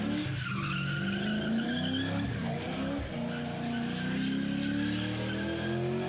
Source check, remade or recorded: recorded